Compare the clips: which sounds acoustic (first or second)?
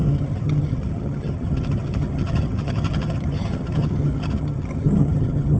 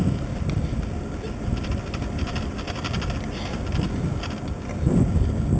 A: second